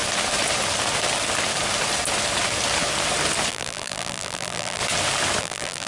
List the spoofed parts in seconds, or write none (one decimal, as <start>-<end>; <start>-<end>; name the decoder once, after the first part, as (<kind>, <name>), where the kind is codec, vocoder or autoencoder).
3.5-4.8 (vocoder, BigVGAN v2); 5.4-5.9